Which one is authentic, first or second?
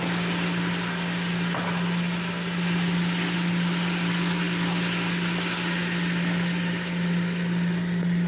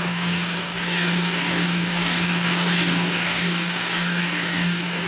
first